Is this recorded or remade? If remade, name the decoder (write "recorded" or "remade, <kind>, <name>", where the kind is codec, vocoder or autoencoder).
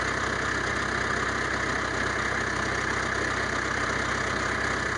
recorded